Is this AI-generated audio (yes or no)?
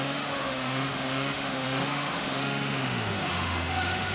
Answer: yes